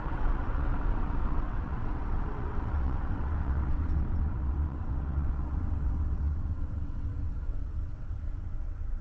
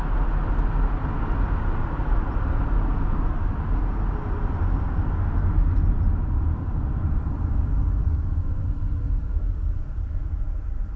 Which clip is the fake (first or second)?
first